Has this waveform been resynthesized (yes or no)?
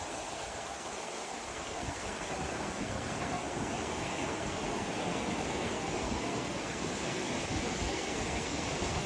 yes